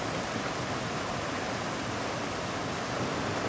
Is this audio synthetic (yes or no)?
no